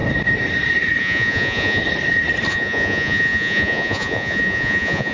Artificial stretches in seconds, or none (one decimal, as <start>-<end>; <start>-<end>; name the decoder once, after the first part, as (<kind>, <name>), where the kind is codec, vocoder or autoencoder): 1.0-1.8 (vocoder, Vocos); 2.5-5.1